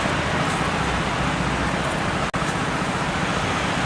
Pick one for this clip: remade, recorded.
recorded